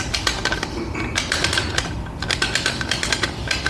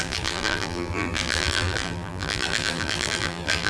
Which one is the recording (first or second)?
first